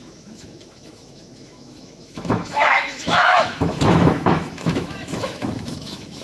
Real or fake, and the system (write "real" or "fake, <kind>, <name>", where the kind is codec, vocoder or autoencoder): fake, autoencoder, DAC-VAE